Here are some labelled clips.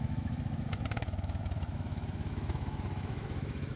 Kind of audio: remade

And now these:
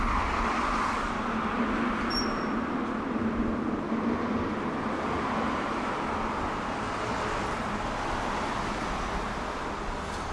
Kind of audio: recorded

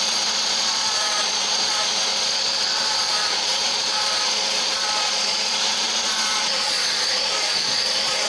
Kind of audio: remade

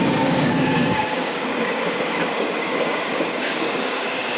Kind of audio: remade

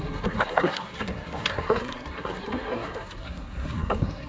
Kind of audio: remade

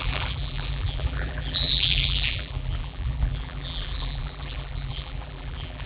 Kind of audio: remade